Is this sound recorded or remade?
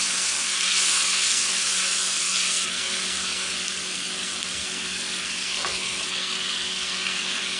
remade